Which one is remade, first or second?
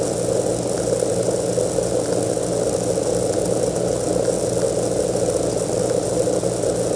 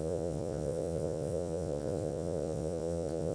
second